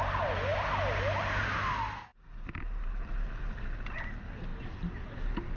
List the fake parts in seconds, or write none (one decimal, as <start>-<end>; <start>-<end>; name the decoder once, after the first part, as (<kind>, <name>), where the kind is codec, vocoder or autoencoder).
none